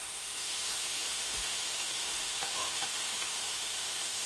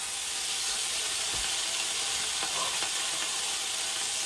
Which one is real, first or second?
second